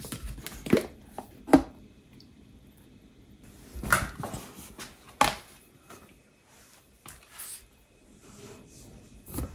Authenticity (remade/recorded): recorded